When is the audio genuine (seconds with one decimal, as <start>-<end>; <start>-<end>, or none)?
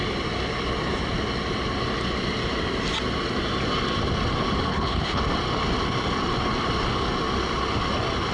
0.0-4.7; 5.2-8.3